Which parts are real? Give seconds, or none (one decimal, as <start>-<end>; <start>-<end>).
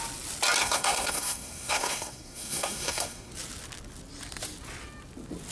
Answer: 0.0-0.6; 3.3-5.5